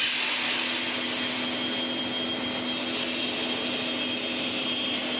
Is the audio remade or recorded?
recorded